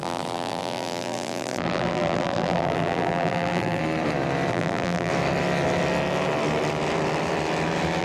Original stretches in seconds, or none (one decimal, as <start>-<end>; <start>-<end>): 3.8-4.5; 5.1-8.0